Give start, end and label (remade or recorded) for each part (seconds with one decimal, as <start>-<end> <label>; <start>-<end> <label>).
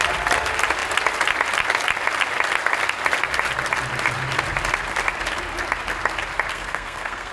0.0-6.5 recorded; 6.5-7.3 remade